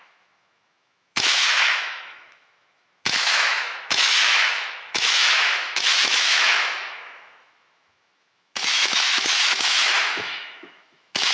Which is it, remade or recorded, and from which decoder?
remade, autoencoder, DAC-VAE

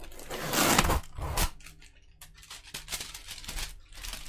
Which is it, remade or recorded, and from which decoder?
recorded